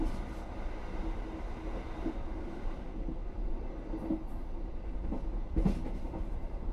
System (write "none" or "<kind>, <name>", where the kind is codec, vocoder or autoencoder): vocoder, BigVGAN v2